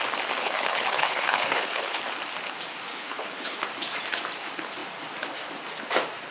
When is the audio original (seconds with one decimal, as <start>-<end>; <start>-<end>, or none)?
0.0-0.4; 2.0-2.9; 3.6-6.3

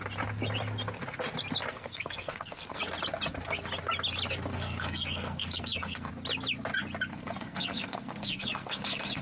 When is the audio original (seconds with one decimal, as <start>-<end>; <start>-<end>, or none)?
0.0-1.7; 2.8-4.5; 6.1-7.1

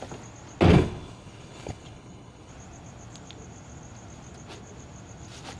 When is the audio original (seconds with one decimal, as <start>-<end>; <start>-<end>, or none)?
0.0-0.7; 2.5-5.6

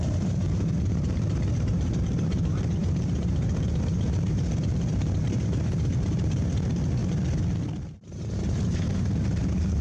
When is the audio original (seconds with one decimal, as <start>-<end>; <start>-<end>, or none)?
7.0-8.0

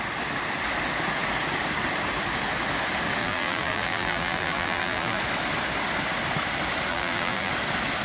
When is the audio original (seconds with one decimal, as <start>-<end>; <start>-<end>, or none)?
0.0-3.2; 5.2-6.9; 7.5-8.0

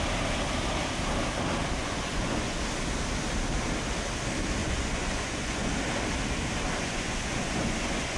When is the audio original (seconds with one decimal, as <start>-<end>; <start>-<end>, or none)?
0.0-1.8; 2.6-4.6; 5.7-6.8

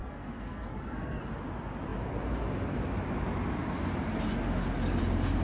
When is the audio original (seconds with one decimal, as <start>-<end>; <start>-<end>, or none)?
1.2-5.4

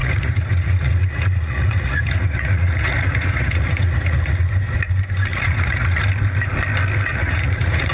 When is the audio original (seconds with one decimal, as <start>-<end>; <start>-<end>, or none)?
4.5-5.3; 6.0-7.1